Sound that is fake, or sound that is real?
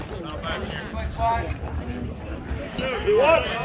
real